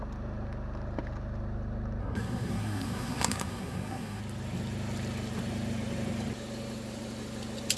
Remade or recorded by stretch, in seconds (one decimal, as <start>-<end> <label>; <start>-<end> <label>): 0.0-2.0 recorded; 2.0-4.2 remade; 4.2-7.8 recorded